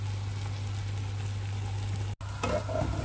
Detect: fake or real real